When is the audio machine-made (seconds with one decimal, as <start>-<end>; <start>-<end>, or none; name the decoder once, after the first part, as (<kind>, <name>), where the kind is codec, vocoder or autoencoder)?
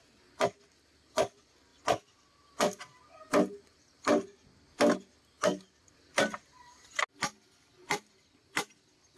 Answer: none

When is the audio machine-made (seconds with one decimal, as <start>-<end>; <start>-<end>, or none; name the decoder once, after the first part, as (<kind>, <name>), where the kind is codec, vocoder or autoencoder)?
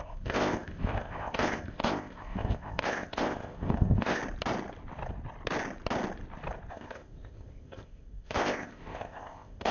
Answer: 0.0-4.2 (codec, ZipCodec); 6.7-9.7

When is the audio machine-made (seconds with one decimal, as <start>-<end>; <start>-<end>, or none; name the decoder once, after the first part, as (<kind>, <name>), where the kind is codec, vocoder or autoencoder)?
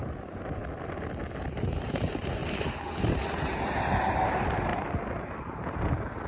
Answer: 0.0-0.6 (vocoder, BigVGAN v2); 1.5-2.4; 3.0-4.7; 5.4-6.3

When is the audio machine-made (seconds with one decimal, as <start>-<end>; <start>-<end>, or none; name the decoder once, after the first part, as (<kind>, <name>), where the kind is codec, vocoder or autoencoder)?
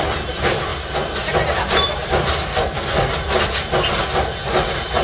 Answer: 2.5-3.1 (codec, SNAC)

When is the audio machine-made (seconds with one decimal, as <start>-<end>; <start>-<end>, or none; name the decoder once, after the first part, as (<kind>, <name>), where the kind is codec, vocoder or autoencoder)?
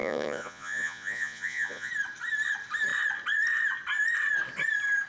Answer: 0.0-1.9 (vocoder, Vocos)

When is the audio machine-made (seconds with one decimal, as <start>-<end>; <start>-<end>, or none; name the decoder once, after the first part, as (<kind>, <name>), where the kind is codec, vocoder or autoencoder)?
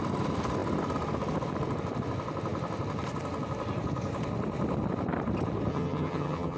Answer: 5.7-6.6 (vocoder, HiFi-GAN)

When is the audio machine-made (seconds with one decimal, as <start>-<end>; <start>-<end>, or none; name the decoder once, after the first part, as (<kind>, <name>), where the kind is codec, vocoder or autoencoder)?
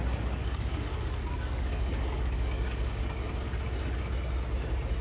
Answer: 0.4-3.3 (codec, DAC)